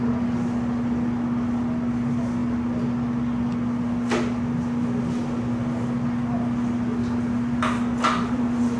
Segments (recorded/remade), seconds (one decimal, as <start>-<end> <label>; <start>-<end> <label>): 0.0-8.8 recorded

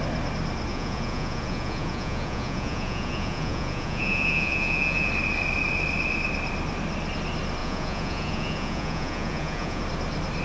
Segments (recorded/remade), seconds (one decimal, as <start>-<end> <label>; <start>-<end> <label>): 0.0-0.7 recorded; 0.7-5.1 remade; 5.1-7.6 recorded; 7.6-9.8 remade; 9.8-10.4 recorded

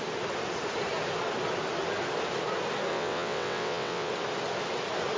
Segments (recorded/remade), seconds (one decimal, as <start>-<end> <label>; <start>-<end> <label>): 0.0-2.9 recorded; 2.9-4.1 remade; 4.1-5.2 recorded

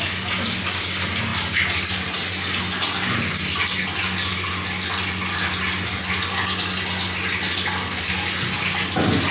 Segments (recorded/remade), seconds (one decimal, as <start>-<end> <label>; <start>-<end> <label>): 0.0-9.3 recorded

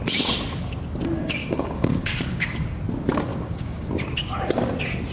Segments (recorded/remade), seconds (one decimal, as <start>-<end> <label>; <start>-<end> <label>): 0.0-1.2 recorded; 1.2-2.8 remade; 2.8-3.3 recorded; 3.3-3.9 remade; 3.9-5.1 recorded

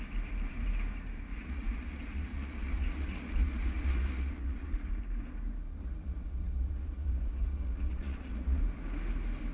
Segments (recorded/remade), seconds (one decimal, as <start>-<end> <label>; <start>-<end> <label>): 0.0-1.3 recorded; 1.3-5.0 remade; 5.0-5.8 recorded; 5.8-8.6 remade; 8.6-9.5 recorded

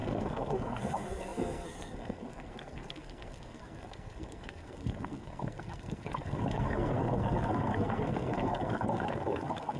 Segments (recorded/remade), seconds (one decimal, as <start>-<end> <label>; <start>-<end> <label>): 0.0-9.8 remade